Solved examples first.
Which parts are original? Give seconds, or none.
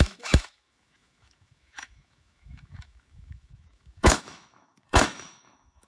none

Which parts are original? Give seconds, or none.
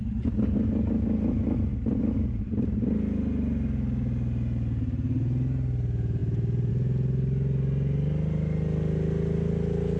0.0-10.0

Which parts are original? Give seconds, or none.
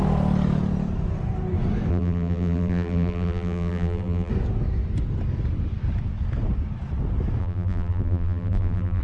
0.0-1.9; 4.3-7.4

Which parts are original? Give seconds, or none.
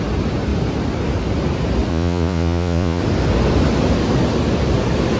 0.0-1.9; 3.0-5.2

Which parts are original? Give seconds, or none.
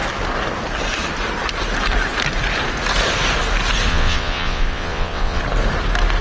0.0-3.9; 5.4-6.2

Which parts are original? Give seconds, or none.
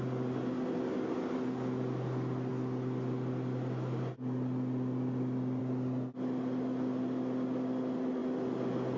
0.0-9.0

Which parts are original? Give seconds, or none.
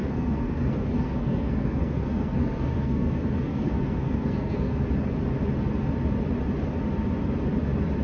4.8-8.0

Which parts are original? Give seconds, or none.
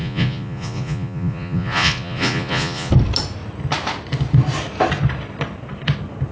2.9-6.3